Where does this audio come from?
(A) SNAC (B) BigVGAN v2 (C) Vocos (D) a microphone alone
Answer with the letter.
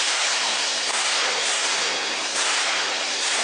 A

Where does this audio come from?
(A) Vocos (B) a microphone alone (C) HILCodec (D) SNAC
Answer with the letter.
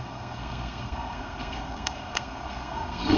D